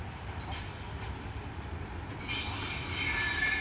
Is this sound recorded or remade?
recorded